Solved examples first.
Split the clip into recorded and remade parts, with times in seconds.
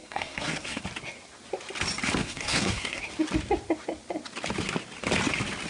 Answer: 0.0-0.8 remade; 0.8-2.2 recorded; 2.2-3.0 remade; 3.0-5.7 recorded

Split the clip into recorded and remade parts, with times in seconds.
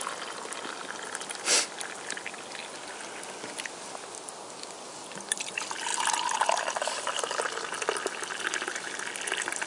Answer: 0.0-9.7 recorded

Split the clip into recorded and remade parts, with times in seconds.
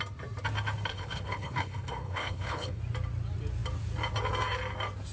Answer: 0.0-0.9 recorded; 0.9-2.8 remade; 2.8-5.1 recorded